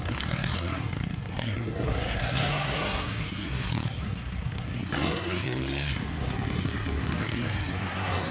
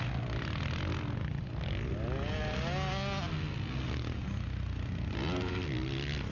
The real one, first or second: second